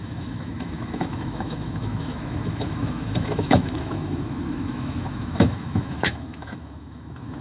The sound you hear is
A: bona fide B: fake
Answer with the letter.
B